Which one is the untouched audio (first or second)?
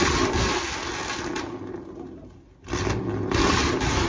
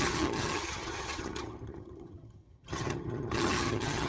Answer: first